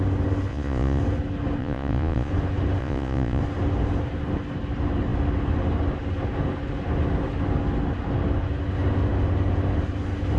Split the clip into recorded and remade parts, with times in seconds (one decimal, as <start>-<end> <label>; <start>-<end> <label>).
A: 0.0-0.5 recorded; 0.5-1.0 remade; 1.0-1.6 recorded; 1.6-2.3 remade; 2.3-2.8 recorded; 2.8-3.4 remade; 3.4-10.4 recorded